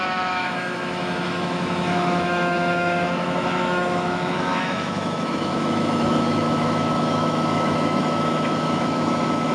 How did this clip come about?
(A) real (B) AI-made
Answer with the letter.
B